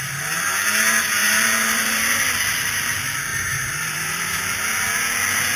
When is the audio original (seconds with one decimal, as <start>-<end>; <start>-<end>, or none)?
0.0-1.2; 2.2-3.3; 4.4-5.6